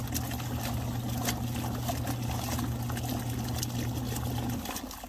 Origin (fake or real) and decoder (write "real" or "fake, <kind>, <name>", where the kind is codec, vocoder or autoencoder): real